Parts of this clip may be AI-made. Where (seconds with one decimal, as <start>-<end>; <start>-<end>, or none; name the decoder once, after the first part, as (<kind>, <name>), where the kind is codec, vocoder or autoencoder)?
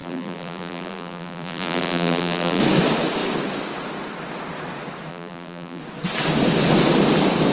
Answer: 0.0-2.6 (vocoder, BigVGAN v2); 5.1-5.8